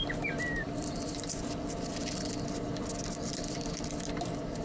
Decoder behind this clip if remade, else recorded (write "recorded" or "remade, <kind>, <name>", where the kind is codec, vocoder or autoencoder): remade, vocoder, BigVGAN v2